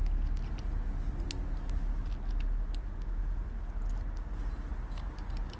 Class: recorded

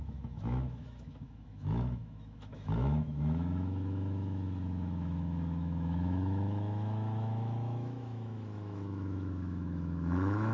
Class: remade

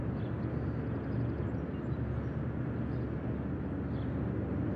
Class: recorded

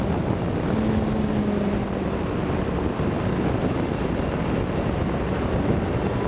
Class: recorded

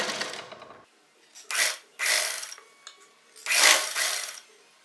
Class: recorded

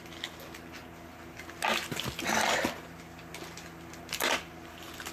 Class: recorded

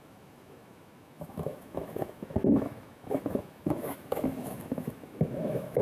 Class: remade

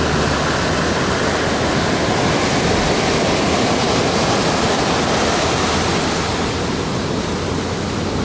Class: recorded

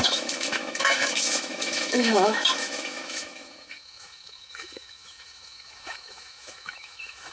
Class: remade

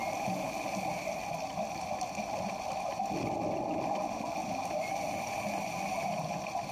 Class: recorded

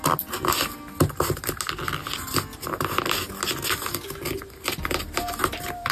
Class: recorded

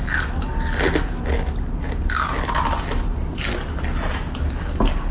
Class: recorded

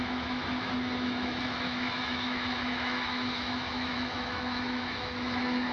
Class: remade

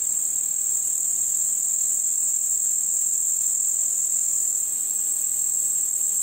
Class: recorded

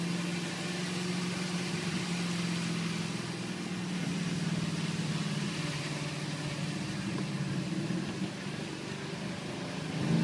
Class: recorded